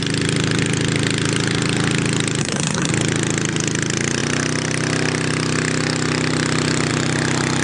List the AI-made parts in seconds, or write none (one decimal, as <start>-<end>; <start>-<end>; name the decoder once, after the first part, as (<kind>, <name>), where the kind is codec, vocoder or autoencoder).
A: 2.4-2.9 (codec, SNAC)